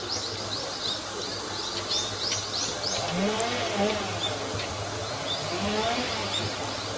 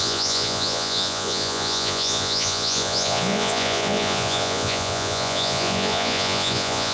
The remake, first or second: second